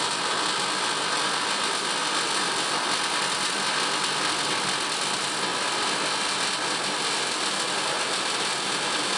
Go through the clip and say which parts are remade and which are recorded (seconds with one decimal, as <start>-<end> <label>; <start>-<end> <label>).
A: 0.0-9.2 recorded